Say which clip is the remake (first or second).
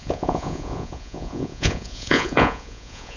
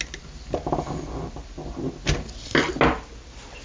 first